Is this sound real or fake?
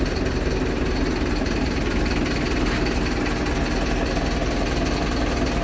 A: real